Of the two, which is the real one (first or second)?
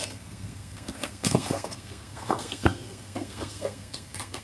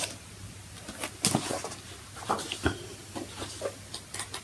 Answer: second